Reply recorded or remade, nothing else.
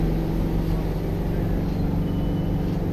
recorded